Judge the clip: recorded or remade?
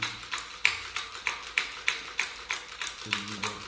recorded